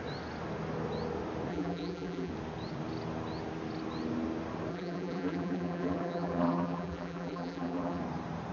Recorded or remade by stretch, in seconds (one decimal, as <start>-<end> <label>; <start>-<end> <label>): 0.0-1.5 recorded; 1.5-2.3 remade; 2.3-4.7 recorded; 4.7-8.0 remade; 8.0-8.5 recorded